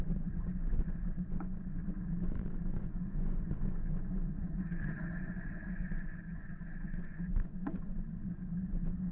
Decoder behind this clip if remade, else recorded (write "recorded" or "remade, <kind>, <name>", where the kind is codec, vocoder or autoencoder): remade, vocoder, Vocos